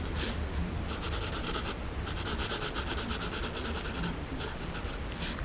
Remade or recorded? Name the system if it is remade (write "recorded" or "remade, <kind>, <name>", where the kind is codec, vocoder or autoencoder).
remade, vocoder, BigVGAN v2